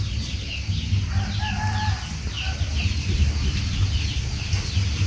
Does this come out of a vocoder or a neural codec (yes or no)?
no